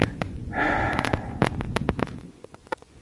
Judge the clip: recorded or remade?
remade